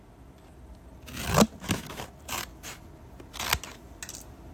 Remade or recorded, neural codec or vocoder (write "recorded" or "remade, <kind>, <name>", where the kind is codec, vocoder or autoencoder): recorded